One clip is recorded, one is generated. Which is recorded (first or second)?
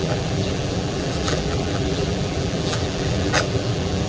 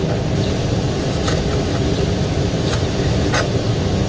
second